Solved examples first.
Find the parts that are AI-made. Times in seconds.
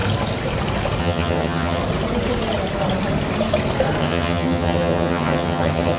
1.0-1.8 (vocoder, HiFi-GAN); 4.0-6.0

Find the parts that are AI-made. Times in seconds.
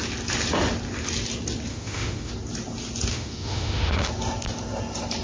1.7-2.3 (autoencoder, DAC-VAE); 3.1-4.1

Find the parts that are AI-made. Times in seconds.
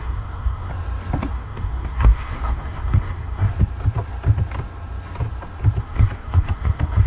0.0-0.7 (codec, SNAC); 1.3-3.5; 5.8-7.1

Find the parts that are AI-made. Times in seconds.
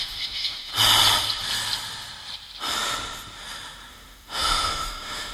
0.0-0.7 (autoencoder, DAC-VAE); 3.9-5.3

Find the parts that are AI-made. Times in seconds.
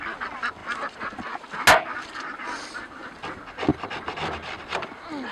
none